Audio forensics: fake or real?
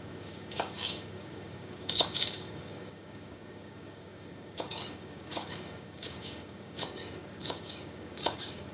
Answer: fake